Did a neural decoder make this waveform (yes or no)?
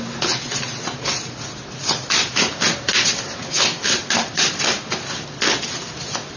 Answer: no